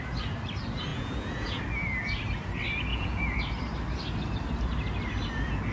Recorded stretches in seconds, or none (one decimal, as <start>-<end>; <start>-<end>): 0.0-0.9; 1.6-2.9; 3.4-5.7